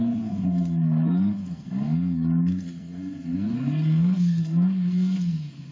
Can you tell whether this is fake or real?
fake